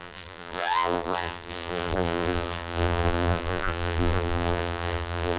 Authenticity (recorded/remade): remade